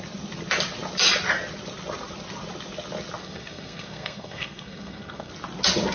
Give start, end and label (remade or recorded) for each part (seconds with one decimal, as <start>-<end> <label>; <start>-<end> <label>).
0.0-3.2 recorded; 3.2-5.3 remade; 5.3-5.9 recorded